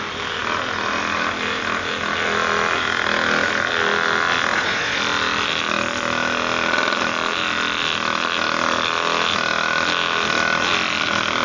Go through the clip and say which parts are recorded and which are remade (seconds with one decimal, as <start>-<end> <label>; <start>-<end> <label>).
0.0-4.5 recorded; 4.5-5.0 remade; 5.0-11.4 recorded